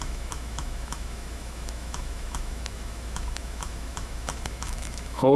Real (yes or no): no